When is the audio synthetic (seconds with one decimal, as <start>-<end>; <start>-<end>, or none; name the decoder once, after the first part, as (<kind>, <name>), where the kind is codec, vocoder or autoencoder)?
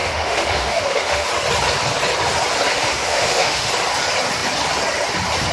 0.0-1.3 (autoencoder, DAC-VAE); 2.7-3.7